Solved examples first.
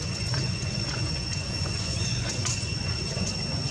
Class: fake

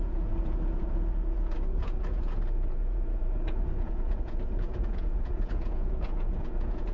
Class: fake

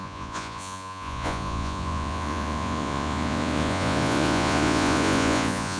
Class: fake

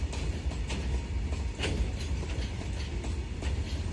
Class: real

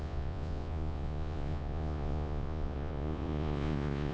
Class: fake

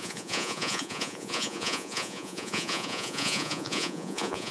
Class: fake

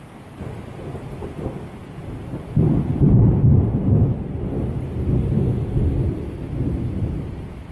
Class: real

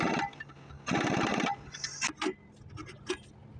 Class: real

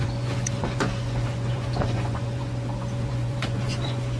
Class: fake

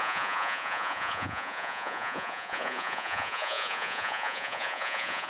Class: fake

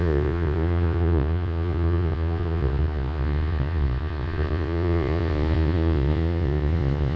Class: fake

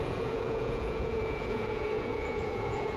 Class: fake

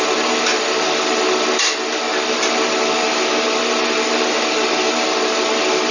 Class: real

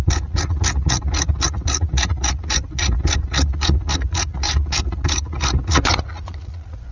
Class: fake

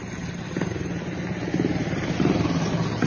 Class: real